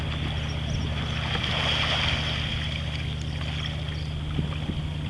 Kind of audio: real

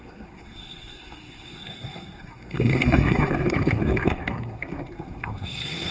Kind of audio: fake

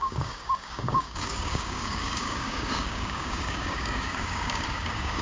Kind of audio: fake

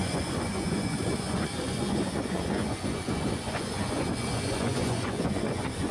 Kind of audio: fake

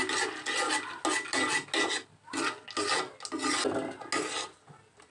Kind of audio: real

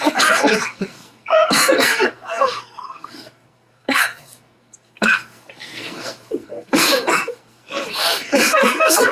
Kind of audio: fake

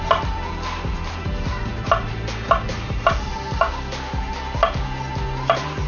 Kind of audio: real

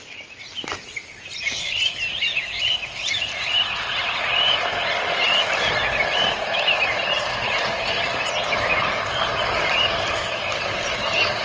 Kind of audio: real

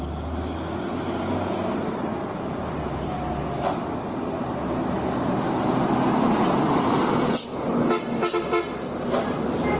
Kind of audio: real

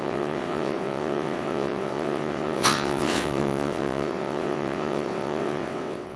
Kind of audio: fake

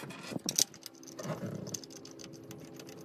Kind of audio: real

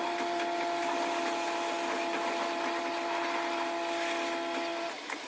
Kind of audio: real